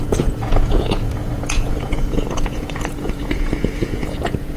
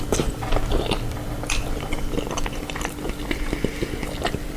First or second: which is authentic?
second